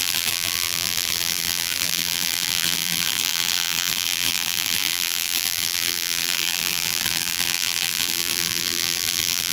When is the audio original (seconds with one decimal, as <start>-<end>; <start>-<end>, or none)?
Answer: none